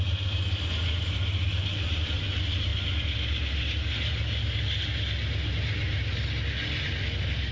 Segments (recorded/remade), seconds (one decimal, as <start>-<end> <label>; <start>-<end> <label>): 0.0-7.5 recorded